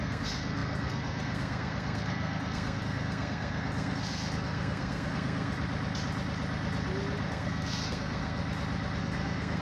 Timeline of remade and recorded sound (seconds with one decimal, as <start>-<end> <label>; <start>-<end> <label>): 0.0-5.5 remade; 5.5-7.3 recorded; 7.3-8.4 remade; 8.4-9.0 recorded; 9.0-9.6 remade